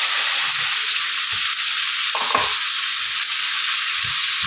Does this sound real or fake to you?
real